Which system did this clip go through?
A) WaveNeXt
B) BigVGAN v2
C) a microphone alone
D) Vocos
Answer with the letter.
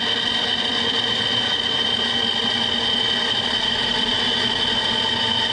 C